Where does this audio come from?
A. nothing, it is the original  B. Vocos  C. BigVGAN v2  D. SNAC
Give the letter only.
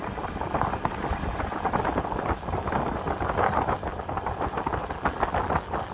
A